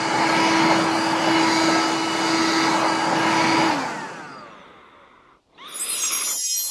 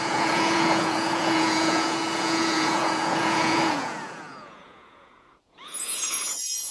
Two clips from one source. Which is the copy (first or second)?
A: second